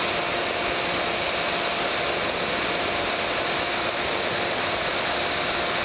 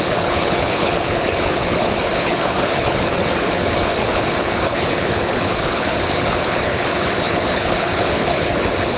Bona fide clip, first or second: first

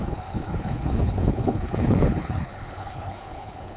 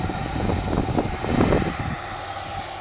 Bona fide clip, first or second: second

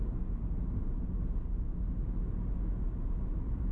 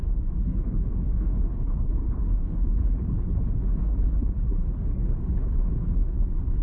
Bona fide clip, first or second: first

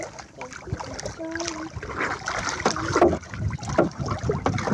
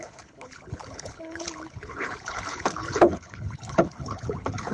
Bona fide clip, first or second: first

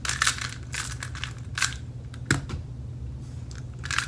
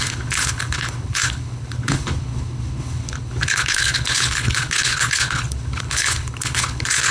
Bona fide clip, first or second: first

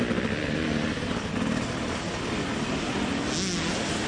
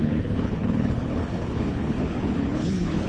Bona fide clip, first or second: first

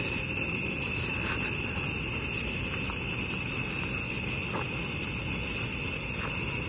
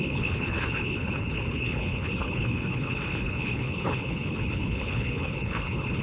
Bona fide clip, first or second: first